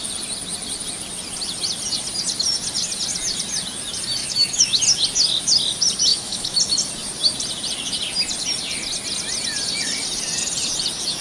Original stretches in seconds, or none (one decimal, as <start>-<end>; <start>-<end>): 0.0-4.2; 4.8-6.1; 6.6-11.2